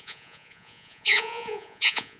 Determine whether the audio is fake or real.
fake